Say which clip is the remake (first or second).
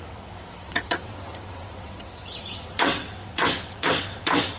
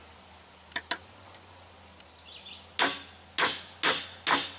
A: first